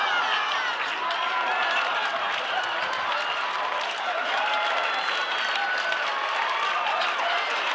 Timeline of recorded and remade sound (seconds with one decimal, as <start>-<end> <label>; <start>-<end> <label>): 0.0-7.7 recorded